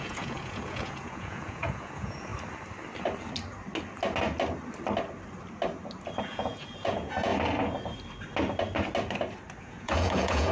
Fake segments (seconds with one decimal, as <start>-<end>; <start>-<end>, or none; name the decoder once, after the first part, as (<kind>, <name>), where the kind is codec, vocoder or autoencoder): 0.0-2.3 (vocoder, Vocos); 6.2-7.3; 9.6-10.5

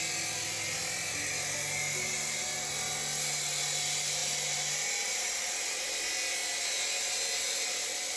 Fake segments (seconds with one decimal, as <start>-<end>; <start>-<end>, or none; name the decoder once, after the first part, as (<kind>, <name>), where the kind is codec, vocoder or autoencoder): none

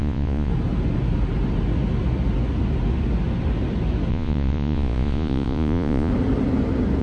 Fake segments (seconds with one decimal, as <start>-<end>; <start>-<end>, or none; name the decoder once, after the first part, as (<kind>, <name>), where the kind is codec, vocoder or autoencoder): 0.0-0.5 (vocoder, Vocos); 4.1-6.1

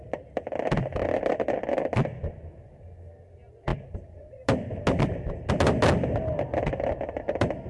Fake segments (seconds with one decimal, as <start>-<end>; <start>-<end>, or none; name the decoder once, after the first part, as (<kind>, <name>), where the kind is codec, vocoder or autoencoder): none